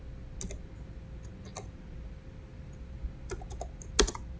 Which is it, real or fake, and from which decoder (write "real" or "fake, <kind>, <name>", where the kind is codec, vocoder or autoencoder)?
real